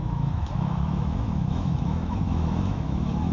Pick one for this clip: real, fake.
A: fake